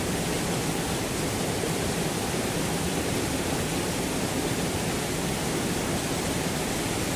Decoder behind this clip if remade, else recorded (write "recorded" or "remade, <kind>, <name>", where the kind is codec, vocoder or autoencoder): recorded